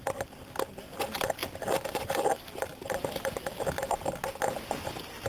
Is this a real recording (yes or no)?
yes